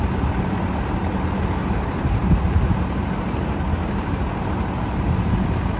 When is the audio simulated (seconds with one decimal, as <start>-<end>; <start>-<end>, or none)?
1.6-2.6